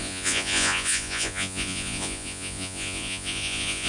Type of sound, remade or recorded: remade